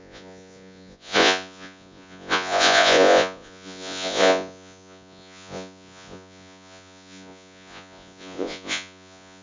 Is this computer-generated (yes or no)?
yes